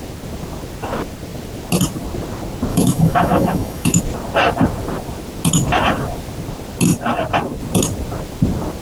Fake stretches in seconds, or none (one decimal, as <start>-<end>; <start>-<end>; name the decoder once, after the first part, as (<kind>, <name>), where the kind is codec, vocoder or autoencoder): 2.7-4.0 (autoencoder, DAC-VAE)